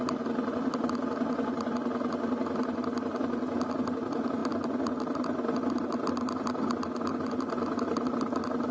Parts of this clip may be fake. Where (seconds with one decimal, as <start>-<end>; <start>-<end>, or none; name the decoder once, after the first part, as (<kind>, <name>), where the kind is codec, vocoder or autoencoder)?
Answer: none